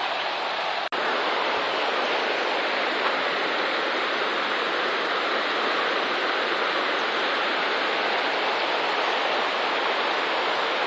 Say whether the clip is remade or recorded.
recorded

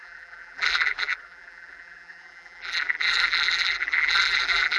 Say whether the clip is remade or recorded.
remade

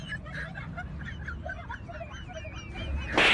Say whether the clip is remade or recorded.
recorded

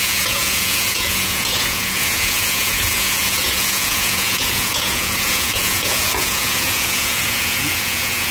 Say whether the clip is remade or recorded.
remade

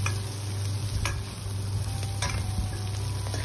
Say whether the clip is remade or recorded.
recorded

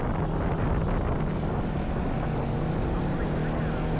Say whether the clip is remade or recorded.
recorded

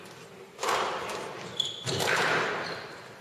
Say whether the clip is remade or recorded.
recorded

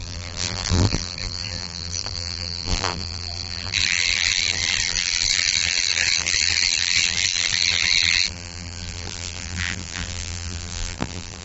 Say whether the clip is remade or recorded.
remade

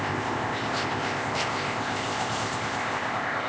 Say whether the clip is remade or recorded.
remade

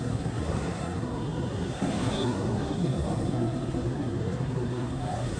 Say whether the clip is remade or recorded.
remade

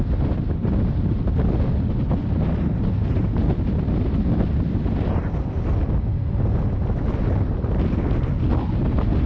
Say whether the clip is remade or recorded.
recorded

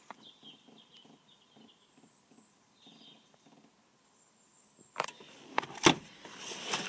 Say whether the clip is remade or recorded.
remade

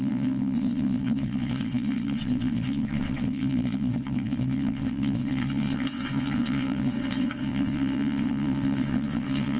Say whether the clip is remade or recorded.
remade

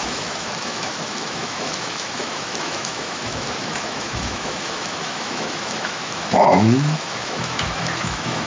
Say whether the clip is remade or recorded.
remade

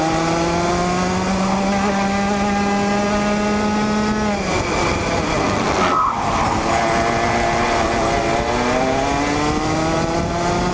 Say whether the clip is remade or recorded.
recorded